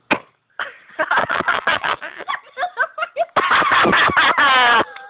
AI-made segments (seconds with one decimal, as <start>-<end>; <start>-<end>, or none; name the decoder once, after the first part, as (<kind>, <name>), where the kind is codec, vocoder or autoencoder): 1.2-2.3 (vocoder, WaveNeXt)